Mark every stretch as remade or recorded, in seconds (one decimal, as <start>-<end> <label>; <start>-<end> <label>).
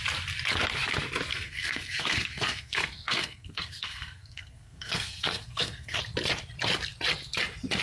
0.0-1.3 recorded; 1.3-6.0 remade; 6.0-7.8 recorded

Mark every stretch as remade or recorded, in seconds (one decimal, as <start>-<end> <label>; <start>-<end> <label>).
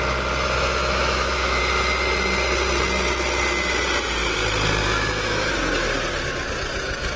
0.0-0.8 recorded; 0.8-1.6 remade; 1.6-4.8 recorded; 4.8-5.5 remade; 5.5-7.2 recorded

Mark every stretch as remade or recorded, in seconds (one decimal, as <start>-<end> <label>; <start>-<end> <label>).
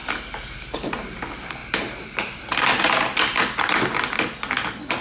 0.0-0.9 remade; 0.9-5.0 recorded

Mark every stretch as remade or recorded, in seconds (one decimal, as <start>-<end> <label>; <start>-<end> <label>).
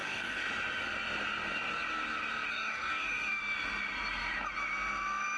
0.0-0.5 remade; 0.5-2.5 recorded; 2.5-3.4 remade; 3.4-5.4 recorded